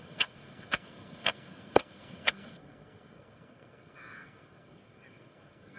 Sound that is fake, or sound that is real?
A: fake